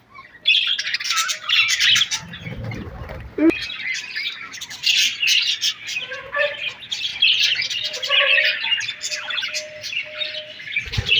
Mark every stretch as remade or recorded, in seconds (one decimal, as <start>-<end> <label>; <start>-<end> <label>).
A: 0.0-11.2 recorded